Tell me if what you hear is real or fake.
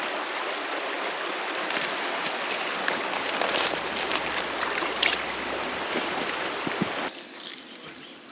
fake